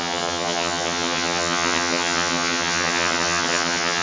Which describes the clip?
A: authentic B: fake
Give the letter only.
B